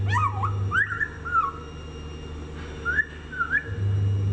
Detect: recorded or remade recorded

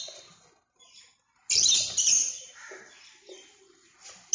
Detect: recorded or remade recorded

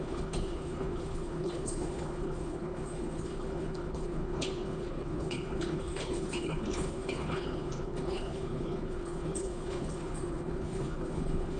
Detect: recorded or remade remade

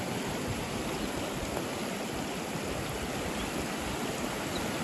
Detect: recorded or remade recorded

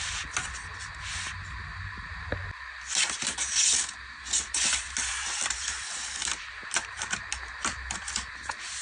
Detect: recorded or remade recorded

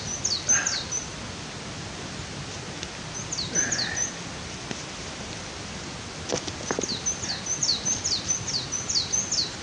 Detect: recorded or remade recorded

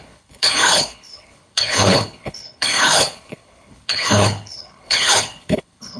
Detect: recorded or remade remade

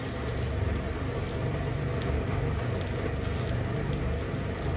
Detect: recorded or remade recorded